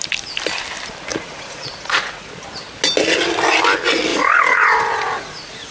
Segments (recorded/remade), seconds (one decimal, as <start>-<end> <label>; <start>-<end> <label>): 0.0-1.1 recorded; 1.1-2.4 remade; 2.4-4.1 recorded; 4.1-5.7 remade

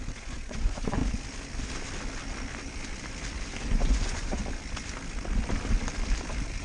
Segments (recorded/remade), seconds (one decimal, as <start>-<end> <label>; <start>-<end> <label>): 0.0-1.0 remade; 1.0-3.6 recorded; 3.6-4.4 remade; 4.4-6.6 recorded

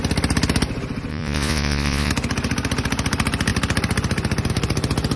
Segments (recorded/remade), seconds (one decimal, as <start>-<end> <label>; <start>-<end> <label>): 0.0-1.1 recorded; 1.1-2.1 remade; 2.1-5.2 recorded

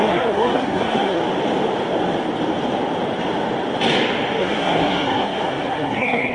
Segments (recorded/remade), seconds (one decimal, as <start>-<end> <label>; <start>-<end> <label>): 0.0-1.2 remade; 1.2-4.4 recorded; 4.4-6.3 remade

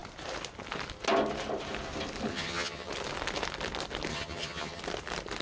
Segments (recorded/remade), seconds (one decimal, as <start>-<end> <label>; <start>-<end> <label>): 0.0-2.3 recorded; 2.3-2.9 remade; 2.9-4.1 recorded; 4.1-4.8 remade; 4.8-5.4 recorded

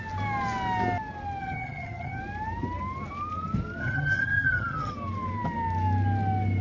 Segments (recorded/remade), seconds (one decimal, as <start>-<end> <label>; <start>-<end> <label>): 0.0-1.4 recorded; 1.4-2.2 remade; 2.2-3.8 recorded; 3.8-4.9 remade; 4.9-6.6 recorded